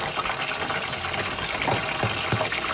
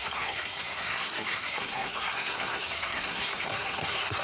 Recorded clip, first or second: first